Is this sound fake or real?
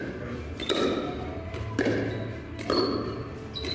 real